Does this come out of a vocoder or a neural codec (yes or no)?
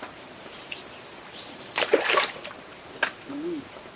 yes